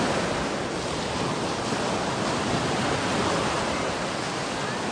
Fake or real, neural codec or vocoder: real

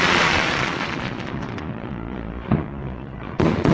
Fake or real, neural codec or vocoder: fake, vocoder, Vocos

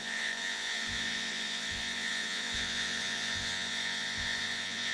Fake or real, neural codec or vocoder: fake, vocoder, Vocos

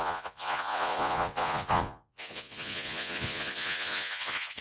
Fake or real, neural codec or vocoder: fake, vocoder, Vocos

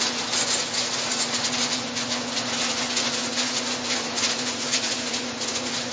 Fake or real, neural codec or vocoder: fake, vocoder, Vocos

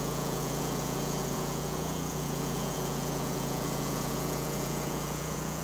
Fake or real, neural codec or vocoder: fake, vocoder, Vocos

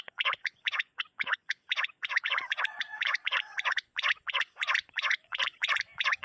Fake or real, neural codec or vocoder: fake, vocoder, Vocos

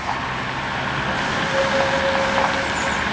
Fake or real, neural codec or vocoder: real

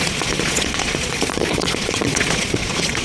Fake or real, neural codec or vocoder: fake, vocoder, Vocos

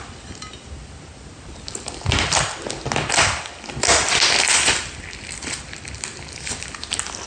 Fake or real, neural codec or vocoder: real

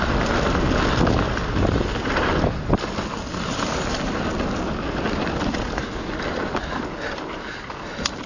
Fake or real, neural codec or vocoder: real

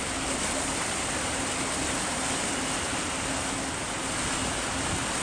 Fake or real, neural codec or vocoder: real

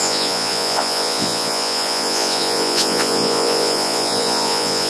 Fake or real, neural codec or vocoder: fake, vocoder, Vocos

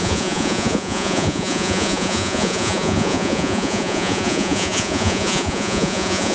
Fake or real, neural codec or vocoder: fake, vocoder, Vocos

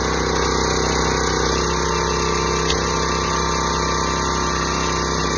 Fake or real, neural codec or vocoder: real